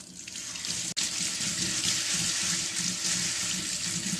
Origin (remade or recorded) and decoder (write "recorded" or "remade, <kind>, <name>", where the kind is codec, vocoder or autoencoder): recorded